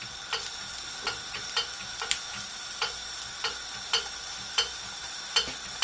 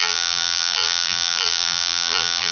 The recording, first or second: first